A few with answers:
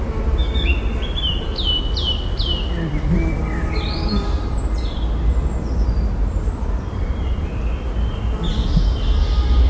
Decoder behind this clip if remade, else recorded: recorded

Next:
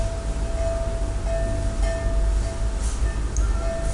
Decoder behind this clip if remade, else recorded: recorded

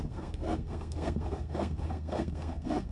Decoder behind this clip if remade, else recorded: remade, codec, SNAC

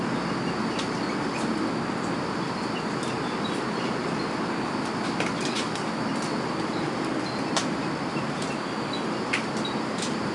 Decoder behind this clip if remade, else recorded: recorded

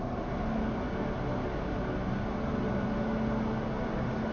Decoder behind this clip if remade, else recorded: recorded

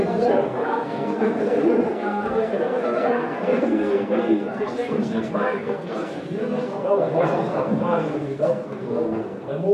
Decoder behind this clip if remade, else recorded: remade, codec, SNAC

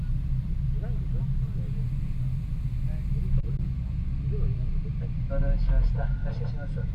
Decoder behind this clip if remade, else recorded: recorded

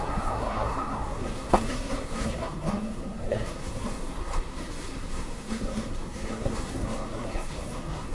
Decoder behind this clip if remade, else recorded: remade, codec, SNAC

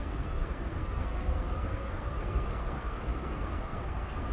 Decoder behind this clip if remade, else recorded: remade, codec, SNAC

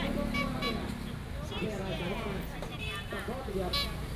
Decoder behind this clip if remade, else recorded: recorded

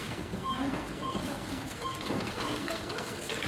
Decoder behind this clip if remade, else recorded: remade, codec, SNAC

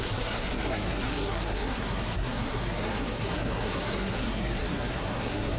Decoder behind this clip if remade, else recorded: remade, codec, SNAC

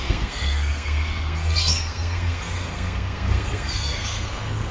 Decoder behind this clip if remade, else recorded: remade, codec, SNAC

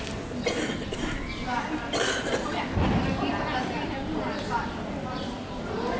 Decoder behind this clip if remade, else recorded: recorded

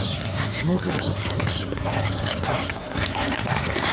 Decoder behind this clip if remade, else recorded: remade, codec, SNAC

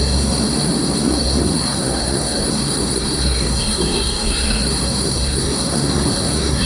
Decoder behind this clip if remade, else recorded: remade, codec, SNAC